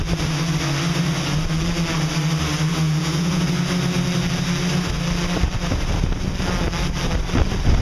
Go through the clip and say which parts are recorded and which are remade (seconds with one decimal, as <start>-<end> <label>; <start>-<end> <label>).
0.0-2.7 recorded; 2.7-3.4 remade; 3.4-7.8 recorded